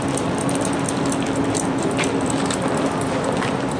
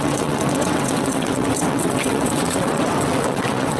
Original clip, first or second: first